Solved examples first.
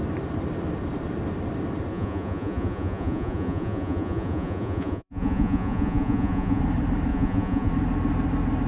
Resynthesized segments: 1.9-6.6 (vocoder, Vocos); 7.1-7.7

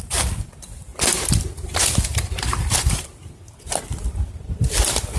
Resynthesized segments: none

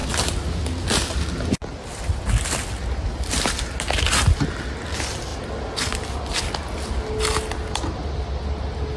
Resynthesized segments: none

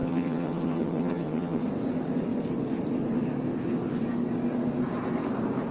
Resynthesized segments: 0.0-1.6 (vocoder, HiFi-GAN)